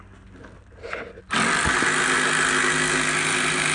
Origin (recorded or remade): recorded